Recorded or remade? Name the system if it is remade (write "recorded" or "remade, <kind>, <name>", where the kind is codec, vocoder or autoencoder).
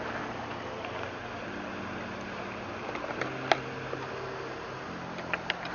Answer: recorded